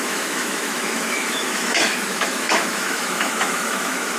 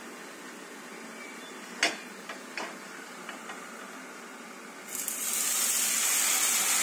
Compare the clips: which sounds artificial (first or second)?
first